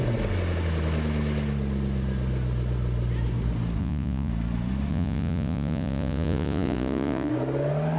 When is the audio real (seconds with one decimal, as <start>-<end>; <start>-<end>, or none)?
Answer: 0.0-3.8; 4.3-4.9; 7.3-8.0